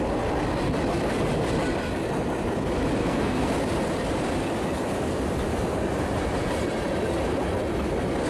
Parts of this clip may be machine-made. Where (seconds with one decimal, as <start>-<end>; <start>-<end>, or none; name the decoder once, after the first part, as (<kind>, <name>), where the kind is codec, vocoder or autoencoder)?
3.0-3.5 (codec, SNAC)